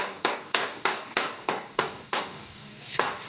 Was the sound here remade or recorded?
remade